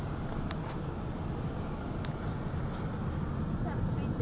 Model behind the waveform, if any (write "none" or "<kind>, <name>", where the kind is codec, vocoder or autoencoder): none